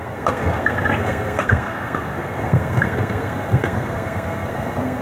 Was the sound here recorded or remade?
remade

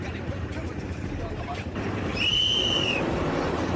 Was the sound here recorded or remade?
remade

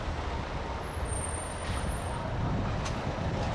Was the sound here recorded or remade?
recorded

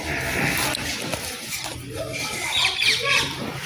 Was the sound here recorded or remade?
recorded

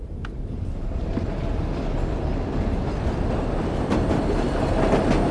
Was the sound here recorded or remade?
recorded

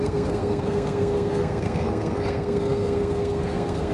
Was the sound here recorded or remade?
remade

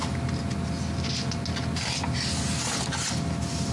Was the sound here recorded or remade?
recorded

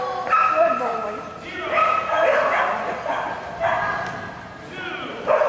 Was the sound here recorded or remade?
recorded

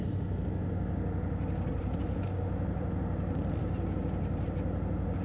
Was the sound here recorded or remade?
recorded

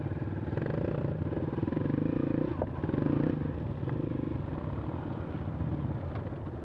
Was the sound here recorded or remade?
recorded